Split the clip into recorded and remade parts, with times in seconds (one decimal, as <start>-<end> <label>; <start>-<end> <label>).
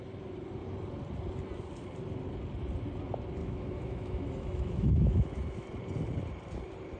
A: 0.0-3.4 recorded; 3.4-5.7 remade; 5.7-7.0 recorded